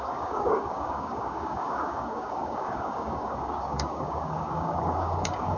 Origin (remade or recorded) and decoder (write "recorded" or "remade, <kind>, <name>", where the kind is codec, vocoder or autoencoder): remade, codec, DAC